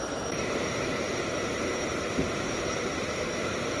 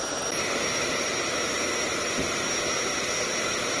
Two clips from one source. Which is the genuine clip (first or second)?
second